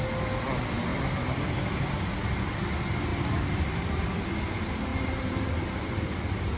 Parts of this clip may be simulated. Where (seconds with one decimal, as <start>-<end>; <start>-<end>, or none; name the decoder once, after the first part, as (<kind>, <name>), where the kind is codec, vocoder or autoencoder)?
3.1-4.2 (vocoder, BigVGAN v2); 4.9-6.6